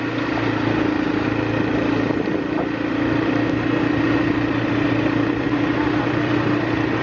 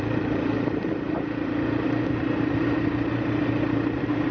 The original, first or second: first